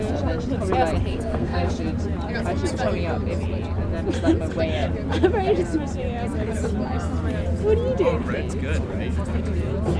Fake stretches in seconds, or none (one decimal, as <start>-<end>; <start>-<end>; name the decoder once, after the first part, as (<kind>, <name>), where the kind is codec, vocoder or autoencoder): 1.1-1.7 (codec, SNAC)